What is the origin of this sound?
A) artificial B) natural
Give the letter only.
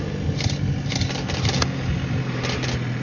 B